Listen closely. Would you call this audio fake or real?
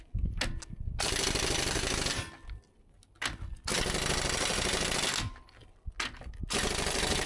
real